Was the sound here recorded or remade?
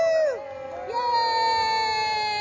recorded